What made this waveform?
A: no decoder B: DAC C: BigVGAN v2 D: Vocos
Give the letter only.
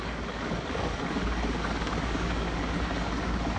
B